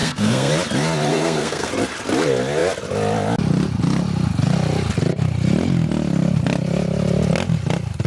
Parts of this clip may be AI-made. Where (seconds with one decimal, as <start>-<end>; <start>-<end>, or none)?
0.0-0.5; 1.1-1.7